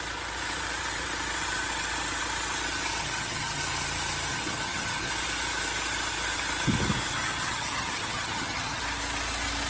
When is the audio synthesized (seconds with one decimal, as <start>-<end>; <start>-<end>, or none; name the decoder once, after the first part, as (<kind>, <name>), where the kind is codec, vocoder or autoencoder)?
3.0-3.6 (vocoder, HiFi-GAN); 4.3-5.1; 7.1-8.8